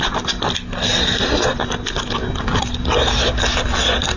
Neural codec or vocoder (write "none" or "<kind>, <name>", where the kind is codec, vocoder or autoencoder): none